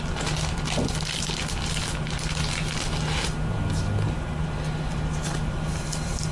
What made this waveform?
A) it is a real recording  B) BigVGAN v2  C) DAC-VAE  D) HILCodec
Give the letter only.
A